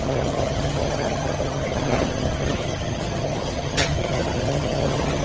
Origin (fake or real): fake